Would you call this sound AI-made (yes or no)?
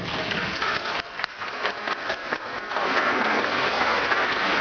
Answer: yes